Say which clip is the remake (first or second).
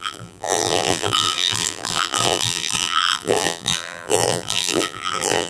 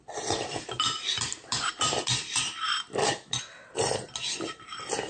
first